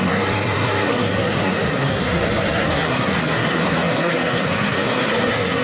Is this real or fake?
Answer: fake